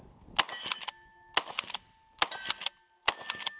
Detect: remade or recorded recorded